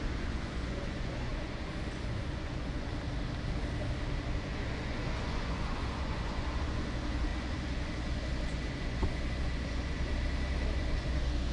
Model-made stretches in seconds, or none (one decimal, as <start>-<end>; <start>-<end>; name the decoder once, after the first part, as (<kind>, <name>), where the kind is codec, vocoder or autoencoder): 0.0-2.9 (vocoder, Vocos); 4.2-10.1; 10.7-11.5